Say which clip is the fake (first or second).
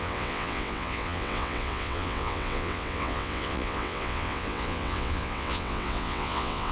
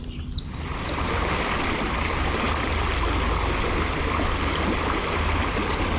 first